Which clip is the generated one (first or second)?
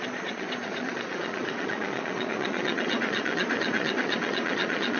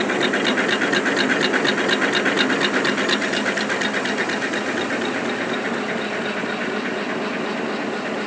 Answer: first